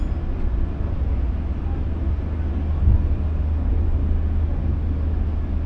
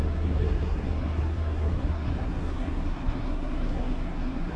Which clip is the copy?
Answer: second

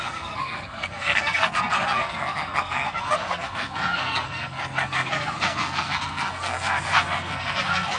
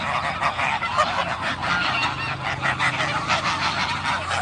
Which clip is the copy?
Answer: first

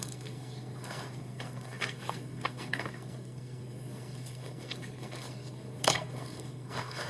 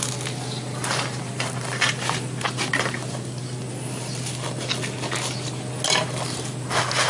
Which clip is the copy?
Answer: first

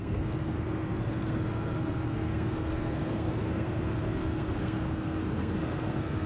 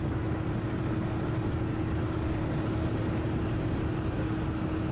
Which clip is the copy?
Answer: first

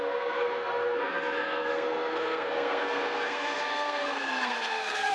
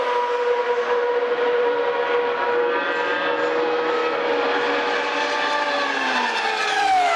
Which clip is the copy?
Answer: first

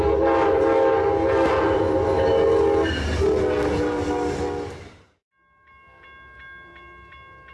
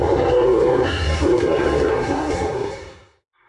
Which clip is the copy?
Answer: second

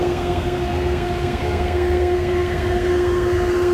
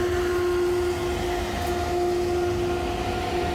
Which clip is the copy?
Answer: first